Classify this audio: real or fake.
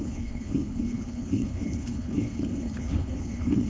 fake